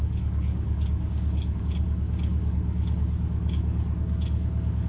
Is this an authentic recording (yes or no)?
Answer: no